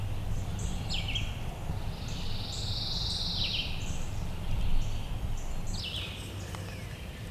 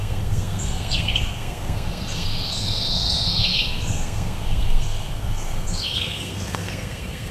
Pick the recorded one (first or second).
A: first